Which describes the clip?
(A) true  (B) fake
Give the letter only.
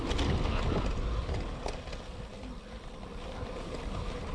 A